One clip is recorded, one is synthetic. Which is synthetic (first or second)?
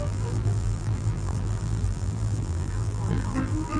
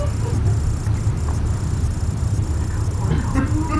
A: first